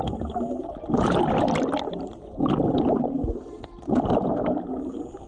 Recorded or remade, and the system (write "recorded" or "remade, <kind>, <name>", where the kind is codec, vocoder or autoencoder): recorded